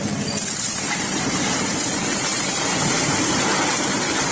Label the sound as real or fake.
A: fake